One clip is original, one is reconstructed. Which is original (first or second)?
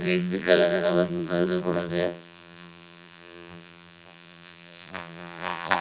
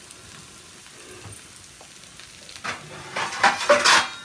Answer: second